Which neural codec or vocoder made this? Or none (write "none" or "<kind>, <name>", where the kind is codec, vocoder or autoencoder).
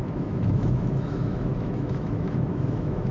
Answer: autoencoder, DAC-VAE